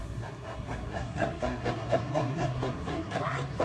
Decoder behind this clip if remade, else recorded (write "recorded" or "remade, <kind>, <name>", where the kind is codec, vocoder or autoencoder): remade, codec, SNAC